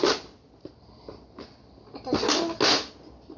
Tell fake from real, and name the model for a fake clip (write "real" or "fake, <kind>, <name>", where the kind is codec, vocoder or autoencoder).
real